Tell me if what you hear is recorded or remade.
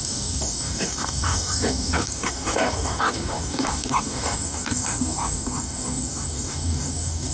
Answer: remade